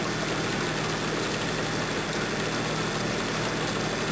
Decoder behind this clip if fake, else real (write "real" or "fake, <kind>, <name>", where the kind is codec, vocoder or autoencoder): real